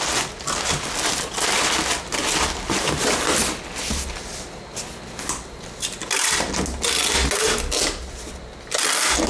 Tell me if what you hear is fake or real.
real